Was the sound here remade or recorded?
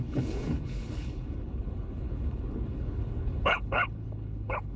remade